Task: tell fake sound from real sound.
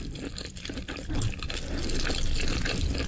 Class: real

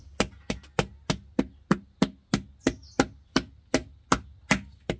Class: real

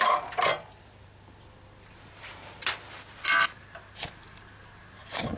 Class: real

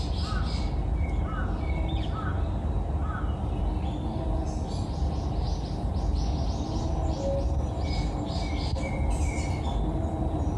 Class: real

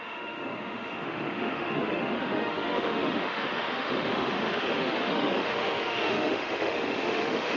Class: fake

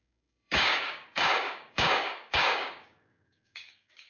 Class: fake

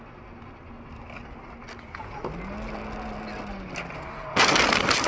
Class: real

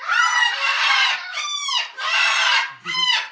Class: fake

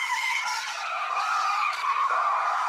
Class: fake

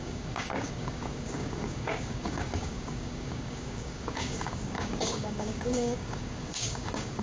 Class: fake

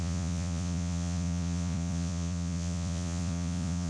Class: fake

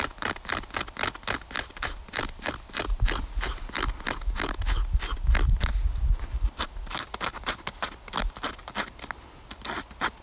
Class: real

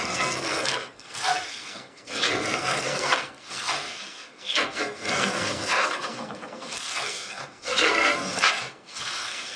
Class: fake